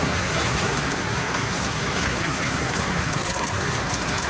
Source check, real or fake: fake